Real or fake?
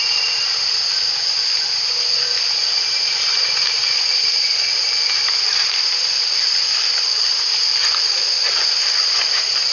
real